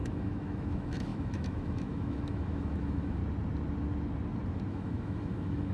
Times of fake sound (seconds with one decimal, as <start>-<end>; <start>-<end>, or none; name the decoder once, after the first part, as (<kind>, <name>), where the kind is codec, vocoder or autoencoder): 0.0-3.2 (autoencoder, DAC-VAE); 4.7-5.7